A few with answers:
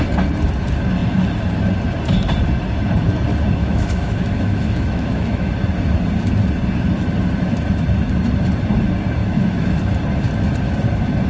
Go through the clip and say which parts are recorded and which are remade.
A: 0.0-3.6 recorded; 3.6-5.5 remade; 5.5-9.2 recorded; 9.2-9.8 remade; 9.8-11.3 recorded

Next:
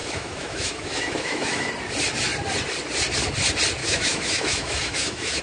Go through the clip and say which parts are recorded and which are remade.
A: 0.0-1.7 remade; 1.7-3.8 recorded; 3.8-5.4 remade